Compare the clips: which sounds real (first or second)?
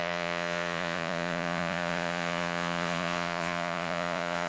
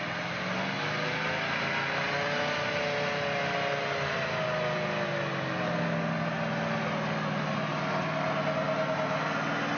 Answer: second